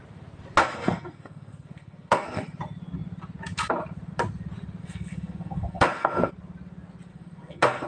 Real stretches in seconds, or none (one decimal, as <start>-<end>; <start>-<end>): 0.0-0.6; 2.4-4.8; 6.3-7.1

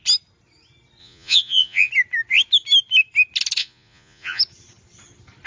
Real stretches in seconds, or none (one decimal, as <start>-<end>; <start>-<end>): 0.0-1.0; 1.9-3.6; 4.4-5.5